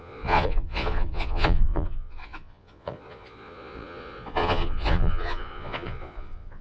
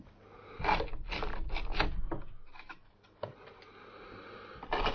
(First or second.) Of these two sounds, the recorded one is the second